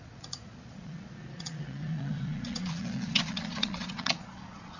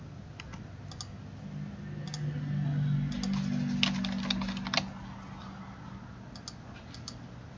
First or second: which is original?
second